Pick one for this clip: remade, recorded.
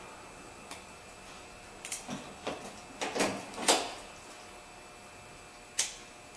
recorded